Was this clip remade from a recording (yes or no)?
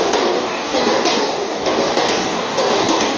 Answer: yes